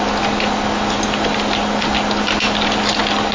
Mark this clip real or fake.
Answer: real